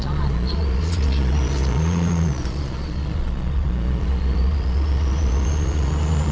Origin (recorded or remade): remade